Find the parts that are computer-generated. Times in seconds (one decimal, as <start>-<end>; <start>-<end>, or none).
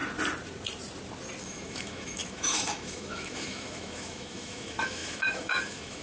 1.4-6.0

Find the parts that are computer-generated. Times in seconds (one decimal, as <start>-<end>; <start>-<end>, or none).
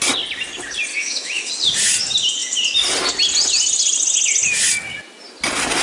0.9-1.5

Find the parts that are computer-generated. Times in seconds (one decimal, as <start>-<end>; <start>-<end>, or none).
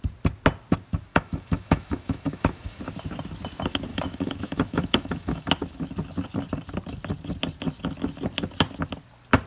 1.1-2.8; 3.9-5.5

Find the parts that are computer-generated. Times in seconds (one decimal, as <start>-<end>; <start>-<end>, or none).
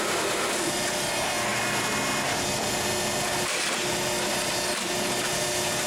none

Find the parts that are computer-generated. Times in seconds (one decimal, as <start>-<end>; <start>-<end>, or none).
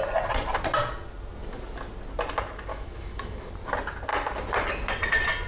2.7-3.5